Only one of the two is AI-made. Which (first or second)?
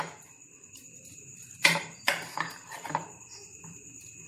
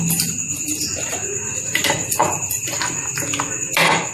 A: first